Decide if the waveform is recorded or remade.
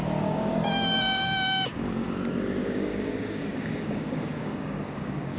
remade